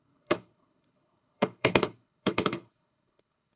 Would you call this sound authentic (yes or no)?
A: no